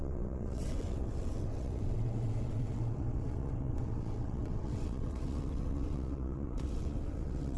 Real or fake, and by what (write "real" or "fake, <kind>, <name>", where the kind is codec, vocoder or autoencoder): fake, vocoder, WaveNeXt